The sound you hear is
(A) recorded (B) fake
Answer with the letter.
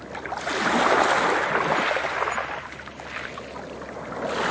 A